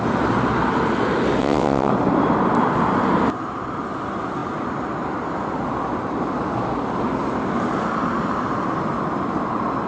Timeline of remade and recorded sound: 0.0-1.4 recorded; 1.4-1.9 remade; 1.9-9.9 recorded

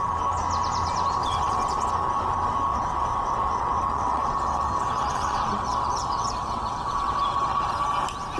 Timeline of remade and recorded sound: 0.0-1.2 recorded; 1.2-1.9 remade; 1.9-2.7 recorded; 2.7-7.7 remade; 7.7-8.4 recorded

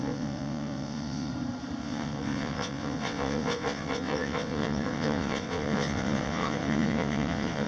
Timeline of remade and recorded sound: 0.0-1.3 remade; 1.3-1.8 recorded; 1.8-7.7 remade

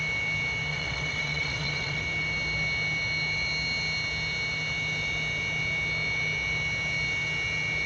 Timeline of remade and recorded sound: 0.0-0.7 recorded; 0.7-2.0 remade; 2.0-7.9 recorded

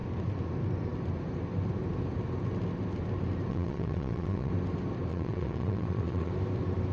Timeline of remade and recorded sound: 0.0-3.5 recorded; 3.5-4.5 remade; 4.5-5.1 recorded; 5.1-6.3 remade; 6.3-6.9 recorded

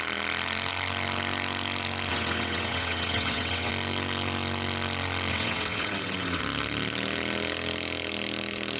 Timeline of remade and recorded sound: 0.0-2.1 recorded; 2.1-3.7 remade; 3.7-5.3 recorded; 5.3-6.4 remade; 6.4-8.8 recorded

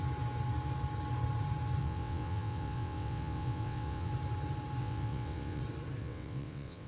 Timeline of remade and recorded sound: 0.0-1.8 recorded; 1.8-4.1 remade; 4.1-4.8 recorded; 4.8-5.6 remade; 5.6-6.0 recorded; 6.0-6.9 remade